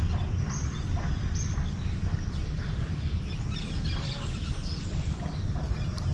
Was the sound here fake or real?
real